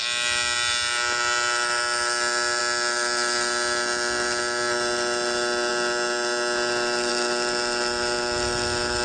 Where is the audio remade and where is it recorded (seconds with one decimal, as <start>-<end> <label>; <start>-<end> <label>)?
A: 0.0-9.0 recorded